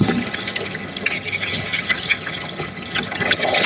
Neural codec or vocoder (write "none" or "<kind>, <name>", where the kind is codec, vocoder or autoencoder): vocoder, HiFi-GAN